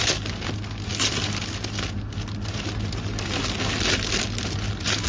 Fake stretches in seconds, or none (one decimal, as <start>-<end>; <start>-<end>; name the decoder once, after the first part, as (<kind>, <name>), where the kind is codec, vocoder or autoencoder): none